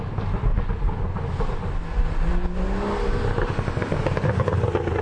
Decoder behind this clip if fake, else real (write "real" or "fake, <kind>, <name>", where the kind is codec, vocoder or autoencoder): real